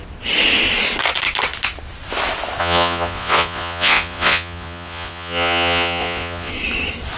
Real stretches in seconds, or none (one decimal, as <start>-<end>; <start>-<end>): 0.0-2.6; 6.5-7.2